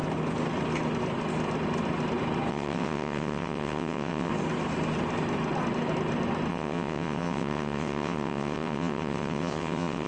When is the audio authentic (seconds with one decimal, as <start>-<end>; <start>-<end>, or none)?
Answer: 0.0-2.5; 4.3-6.5